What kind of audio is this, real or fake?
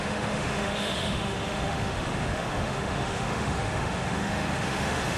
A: fake